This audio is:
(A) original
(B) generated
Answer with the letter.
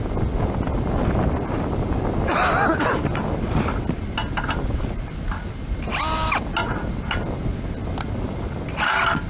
A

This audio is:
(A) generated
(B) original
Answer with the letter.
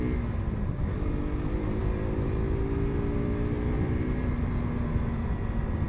B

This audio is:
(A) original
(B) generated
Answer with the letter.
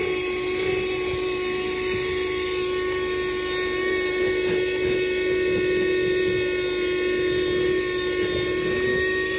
A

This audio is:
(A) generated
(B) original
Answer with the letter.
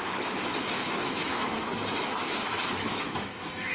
A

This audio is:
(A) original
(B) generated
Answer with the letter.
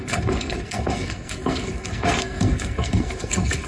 B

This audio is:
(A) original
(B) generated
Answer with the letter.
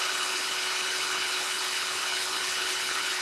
B